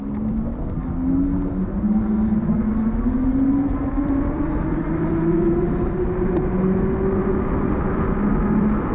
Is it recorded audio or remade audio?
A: recorded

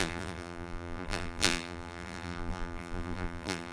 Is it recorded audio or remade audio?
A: remade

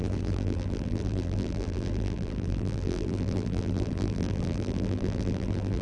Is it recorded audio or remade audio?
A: remade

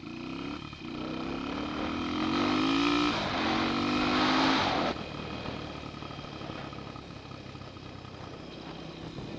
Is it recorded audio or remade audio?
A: recorded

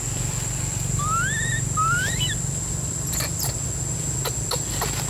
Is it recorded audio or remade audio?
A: recorded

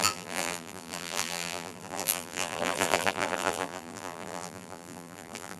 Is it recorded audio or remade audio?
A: remade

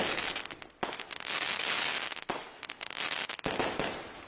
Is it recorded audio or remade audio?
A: recorded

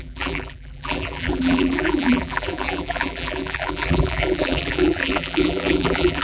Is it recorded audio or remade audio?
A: remade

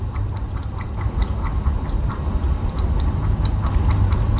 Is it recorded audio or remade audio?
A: remade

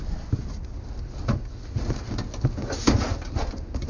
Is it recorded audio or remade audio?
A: recorded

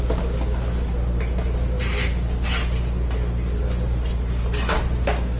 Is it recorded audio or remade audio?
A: recorded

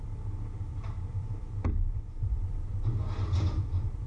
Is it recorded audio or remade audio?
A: remade